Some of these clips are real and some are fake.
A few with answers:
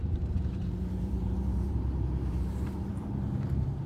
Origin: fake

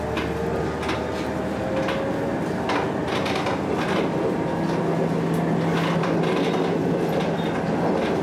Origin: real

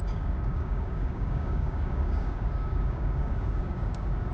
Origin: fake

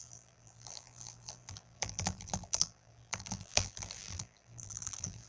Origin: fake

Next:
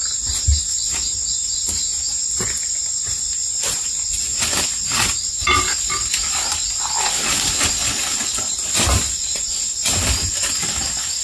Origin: real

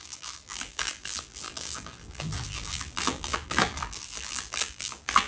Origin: fake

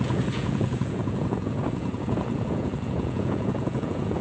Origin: fake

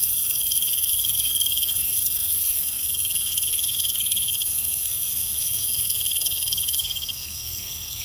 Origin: fake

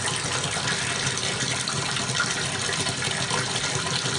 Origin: real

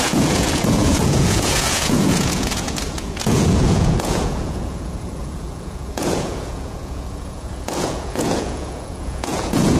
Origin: fake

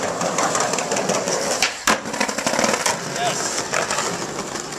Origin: real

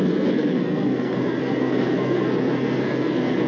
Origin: fake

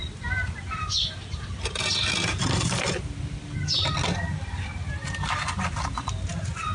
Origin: real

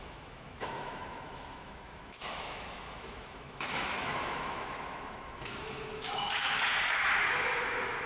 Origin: fake